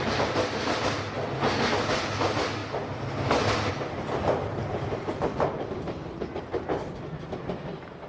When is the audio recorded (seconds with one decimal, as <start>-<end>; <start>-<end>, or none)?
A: 0.0-5.3; 6.3-8.1